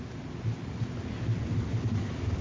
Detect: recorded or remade recorded